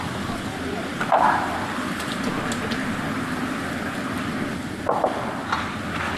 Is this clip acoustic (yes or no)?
yes